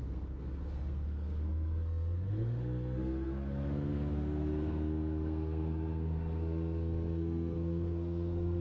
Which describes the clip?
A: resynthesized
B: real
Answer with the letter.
A